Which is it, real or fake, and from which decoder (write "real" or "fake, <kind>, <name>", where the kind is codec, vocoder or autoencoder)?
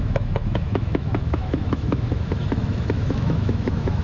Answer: fake, autoencoder, DAC-VAE